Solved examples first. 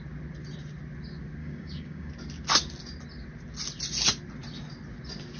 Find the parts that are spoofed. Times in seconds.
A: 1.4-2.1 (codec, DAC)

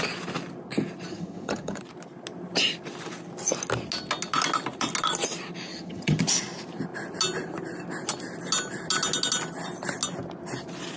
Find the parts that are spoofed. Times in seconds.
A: 1.1-1.8 (vocoder, HiFi-GAN); 5.7-6.2

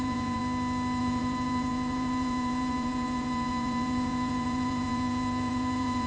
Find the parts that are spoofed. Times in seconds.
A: 0.0-0.4 (vocoder, Vocos); 1.0-6.1

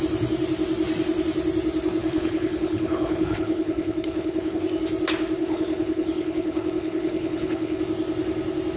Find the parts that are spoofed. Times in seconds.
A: 2.0-4.6 (codec, HILCodec); 5.4-7.8